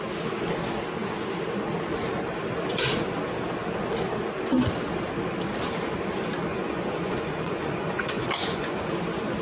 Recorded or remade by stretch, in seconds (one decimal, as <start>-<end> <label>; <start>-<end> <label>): 0.0-6.5 recorded; 6.5-8.9 remade; 8.9-9.4 recorded